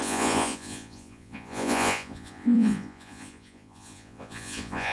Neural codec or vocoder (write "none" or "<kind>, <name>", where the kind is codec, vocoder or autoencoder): vocoder, Vocos